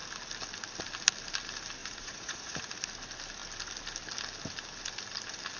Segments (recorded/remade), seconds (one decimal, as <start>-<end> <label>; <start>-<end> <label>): 0.0-1.8 recorded; 1.8-2.7 remade; 2.7-5.6 recorded